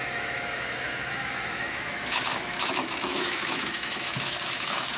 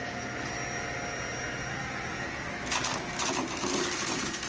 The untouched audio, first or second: second